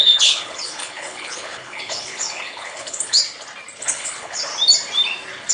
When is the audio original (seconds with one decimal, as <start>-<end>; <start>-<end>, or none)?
3.2-3.8; 4.5-5.5